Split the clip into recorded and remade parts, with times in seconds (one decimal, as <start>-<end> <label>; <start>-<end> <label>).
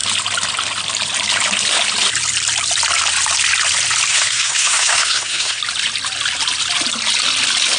0.0-4.1 recorded; 4.1-5.6 remade; 5.6-7.8 recorded